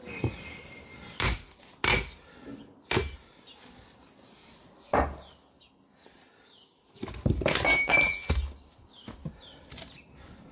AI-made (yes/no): no